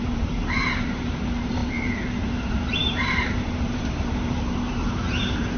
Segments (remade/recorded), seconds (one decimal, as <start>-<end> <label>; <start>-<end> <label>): 0.0-5.6 remade

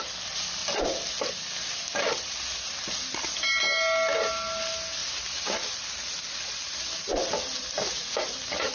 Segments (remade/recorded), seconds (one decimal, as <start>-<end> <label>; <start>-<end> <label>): 0.0-8.7 recorded

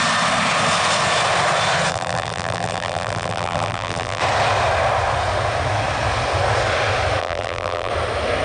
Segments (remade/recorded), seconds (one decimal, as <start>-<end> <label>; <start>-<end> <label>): 0.0-1.9 recorded; 1.9-4.2 remade; 4.2-7.2 recorded; 7.2-7.9 remade; 7.9-8.4 recorded

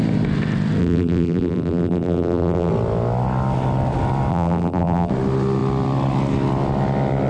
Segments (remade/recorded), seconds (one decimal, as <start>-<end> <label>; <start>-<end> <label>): 0.0-0.8 recorded; 0.8-2.7 remade; 2.7-4.3 recorded; 4.3-5.1 remade; 5.1-7.3 recorded